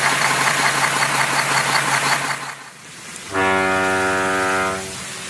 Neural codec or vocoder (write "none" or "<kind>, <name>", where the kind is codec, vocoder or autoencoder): none